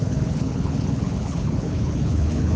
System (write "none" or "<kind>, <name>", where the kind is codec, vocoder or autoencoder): codec, HILCodec